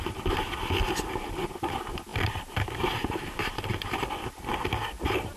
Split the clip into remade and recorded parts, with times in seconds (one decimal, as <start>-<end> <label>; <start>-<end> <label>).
0.0-2.1 recorded; 2.1-3.5 remade; 3.5-5.4 recorded